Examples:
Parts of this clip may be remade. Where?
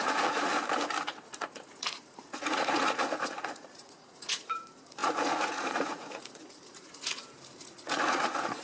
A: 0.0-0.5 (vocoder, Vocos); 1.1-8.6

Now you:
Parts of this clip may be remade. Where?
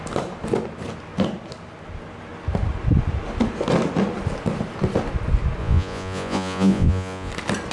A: 5.6-7.3 (vocoder, Vocos)